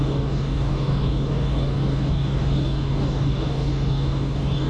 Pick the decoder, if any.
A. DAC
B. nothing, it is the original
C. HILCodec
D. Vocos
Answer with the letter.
A